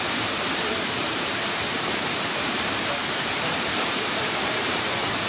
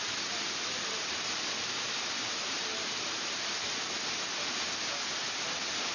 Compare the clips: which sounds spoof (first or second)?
first